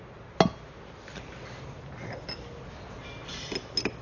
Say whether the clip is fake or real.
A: real